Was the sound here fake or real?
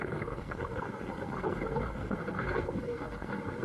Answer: fake